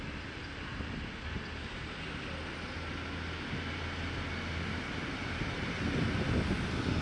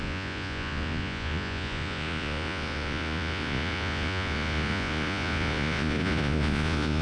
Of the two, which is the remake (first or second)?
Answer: second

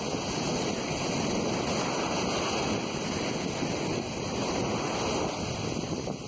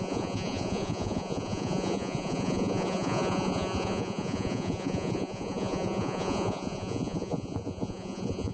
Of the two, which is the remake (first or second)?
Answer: second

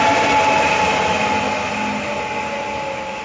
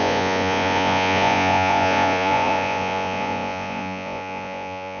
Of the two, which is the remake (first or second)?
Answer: second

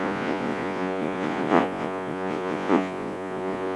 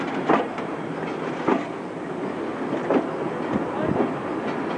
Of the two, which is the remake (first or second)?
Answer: first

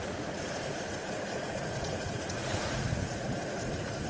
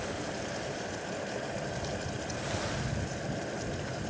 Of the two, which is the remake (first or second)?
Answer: first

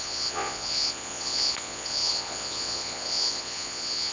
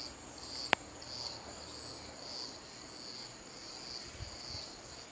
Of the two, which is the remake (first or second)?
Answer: first